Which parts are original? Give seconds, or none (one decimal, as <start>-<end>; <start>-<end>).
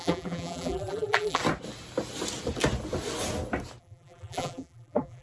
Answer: 1.4-3.8